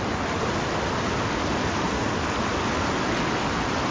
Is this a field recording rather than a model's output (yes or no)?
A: yes